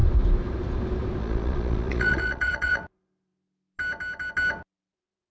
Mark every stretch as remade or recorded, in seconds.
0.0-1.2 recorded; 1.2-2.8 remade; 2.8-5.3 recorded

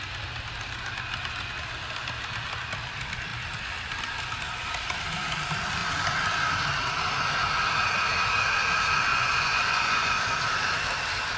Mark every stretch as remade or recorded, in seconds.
0.0-9.1 recorded; 9.1-10.1 remade; 10.1-11.4 recorded

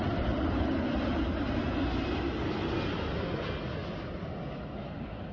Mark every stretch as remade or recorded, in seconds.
0.0-5.3 recorded

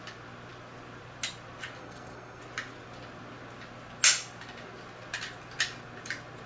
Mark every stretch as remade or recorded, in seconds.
0.0-1.8 recorded; 1.8-2.4 remade; 2.4-6.5 recorded

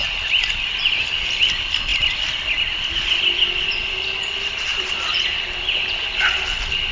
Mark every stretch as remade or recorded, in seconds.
0.0-4.7 recorded; 4.7-6.2 remade; 6.2-6.9 recorded

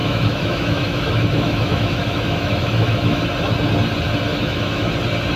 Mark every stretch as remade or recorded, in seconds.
0.0-3.2 remade; 3.2-4.3 recorded; 4.3-4.9 remade; 4.9-5.4 recorded